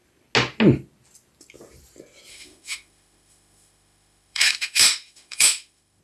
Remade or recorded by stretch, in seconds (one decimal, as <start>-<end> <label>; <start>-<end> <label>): 0.0-2.3 recorded; 2.3-6.0 remade